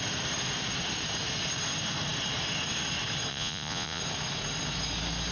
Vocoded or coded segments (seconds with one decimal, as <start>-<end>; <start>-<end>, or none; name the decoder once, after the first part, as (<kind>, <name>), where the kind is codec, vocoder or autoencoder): 3.3-4.0 (vocoder, Vocos)